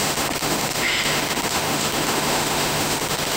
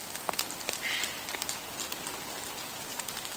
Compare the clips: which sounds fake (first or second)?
first